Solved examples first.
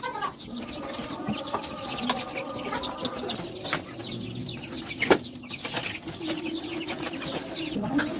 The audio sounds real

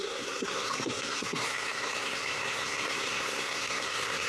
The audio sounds fake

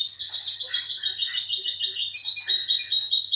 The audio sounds real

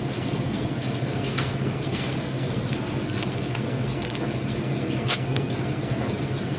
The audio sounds fake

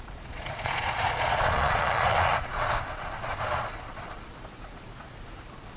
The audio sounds fake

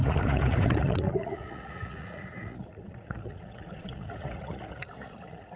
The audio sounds fake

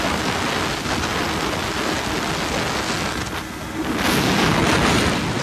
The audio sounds real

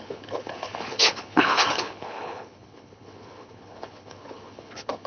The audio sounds fake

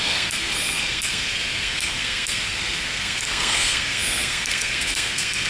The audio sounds fake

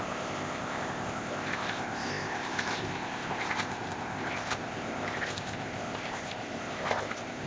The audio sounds fake